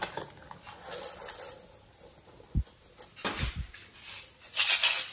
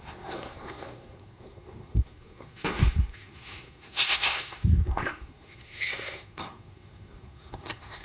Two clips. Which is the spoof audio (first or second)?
second